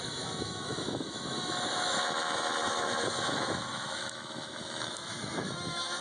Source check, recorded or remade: remade